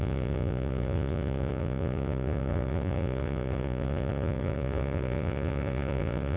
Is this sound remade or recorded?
remade